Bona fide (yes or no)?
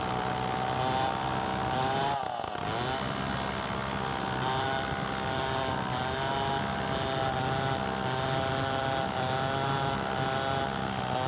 yes